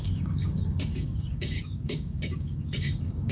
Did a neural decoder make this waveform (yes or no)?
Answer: yes